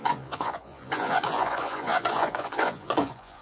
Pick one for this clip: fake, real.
fake